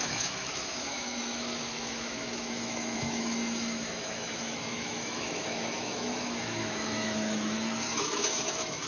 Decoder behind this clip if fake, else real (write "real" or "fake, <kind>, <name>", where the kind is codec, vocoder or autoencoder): fake, autoencoder, DAC-VAE